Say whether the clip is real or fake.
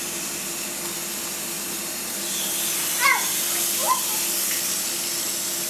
real